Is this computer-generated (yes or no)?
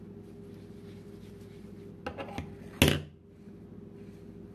no